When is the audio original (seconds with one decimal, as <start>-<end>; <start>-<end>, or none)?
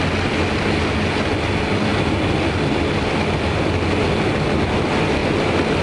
0.0-5.8